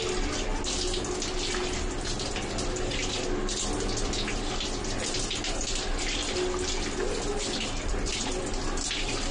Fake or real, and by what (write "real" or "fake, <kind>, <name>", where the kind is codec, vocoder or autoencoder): real